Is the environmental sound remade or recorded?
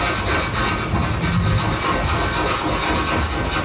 recorded